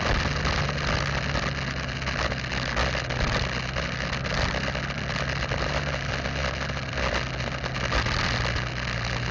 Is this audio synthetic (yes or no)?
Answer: no